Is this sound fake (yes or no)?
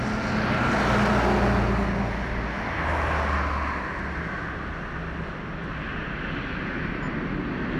no